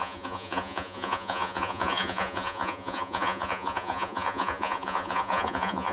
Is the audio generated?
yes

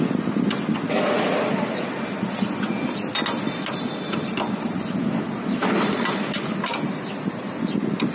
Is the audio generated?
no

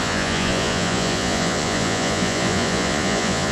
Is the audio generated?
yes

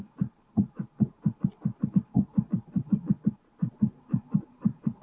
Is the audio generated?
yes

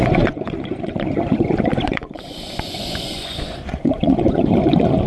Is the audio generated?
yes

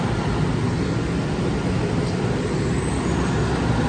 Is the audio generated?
no